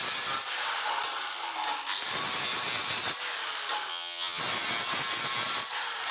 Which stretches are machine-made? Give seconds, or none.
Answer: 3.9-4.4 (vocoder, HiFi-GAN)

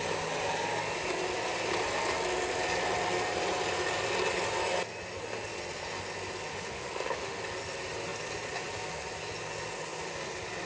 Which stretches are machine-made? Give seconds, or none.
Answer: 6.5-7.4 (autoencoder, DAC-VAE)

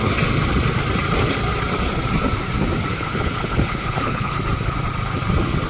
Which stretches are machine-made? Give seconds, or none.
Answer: 2.9-4.4 (codec, HILCodec)

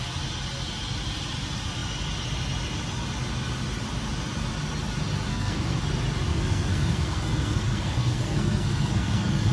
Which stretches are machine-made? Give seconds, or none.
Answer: 5.3-5.8 (codec, SNAC); 6.3-9.5

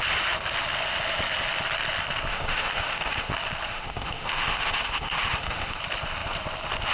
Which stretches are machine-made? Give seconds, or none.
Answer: 2.3-3.3 (autoencoder, DAC-VAE); 3.7-5.8

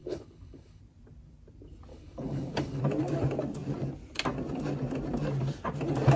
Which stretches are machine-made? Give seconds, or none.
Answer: 0.0-0.8 (codec, HILCodec); 1.9-2.8